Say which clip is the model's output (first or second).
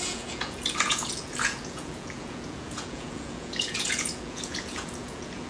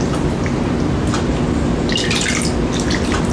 first